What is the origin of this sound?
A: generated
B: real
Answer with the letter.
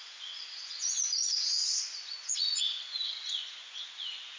A